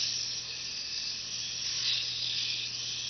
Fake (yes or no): no